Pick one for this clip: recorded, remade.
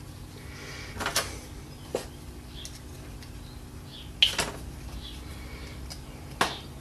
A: recorded